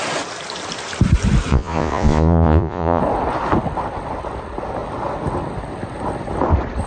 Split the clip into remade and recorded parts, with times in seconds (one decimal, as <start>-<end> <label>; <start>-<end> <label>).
0.0-1.5 recorded; 1.5-3.0 remade; 3.0-6.9 recorded